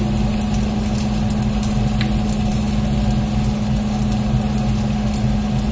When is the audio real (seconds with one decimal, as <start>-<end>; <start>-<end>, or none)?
0.0-5.7